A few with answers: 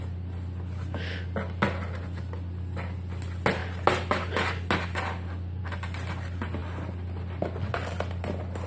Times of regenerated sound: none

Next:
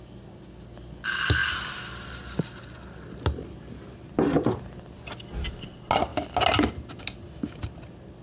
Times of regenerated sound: 1.4-5.1 (vocoder, BigVGAN v2)

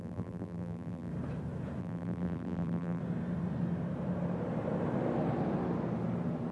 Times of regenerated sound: 0.0-1.1 (vocoder, BigVGAN v2); 1.8-3.0